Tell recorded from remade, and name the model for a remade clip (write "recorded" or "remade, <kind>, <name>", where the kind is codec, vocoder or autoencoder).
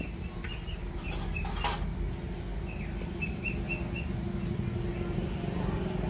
recorded